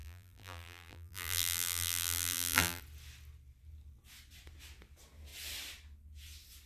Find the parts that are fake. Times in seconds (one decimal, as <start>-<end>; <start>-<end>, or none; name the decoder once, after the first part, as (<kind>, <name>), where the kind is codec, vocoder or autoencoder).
0.0-2.8 (vocoder, BigVGAN v2)